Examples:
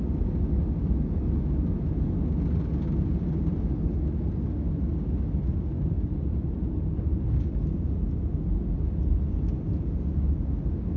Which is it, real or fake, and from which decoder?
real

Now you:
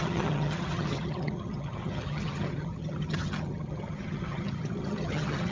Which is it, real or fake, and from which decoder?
fake, vocoder, HiFi-GAN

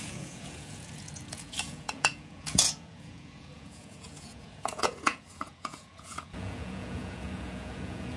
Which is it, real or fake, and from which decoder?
fake, vocoder, Vocos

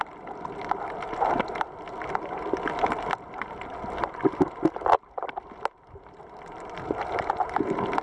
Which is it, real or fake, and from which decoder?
real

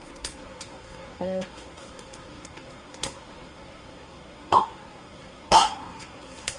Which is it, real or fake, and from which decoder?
fake, codec, SNAC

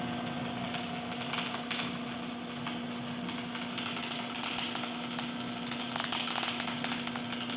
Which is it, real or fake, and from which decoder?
real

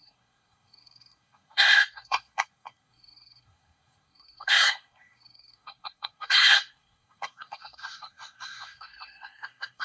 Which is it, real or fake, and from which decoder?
fake, codec, SNAC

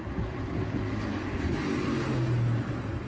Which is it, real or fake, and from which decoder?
real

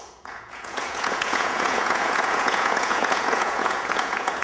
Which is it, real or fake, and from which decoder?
fake, vocoder, Vocos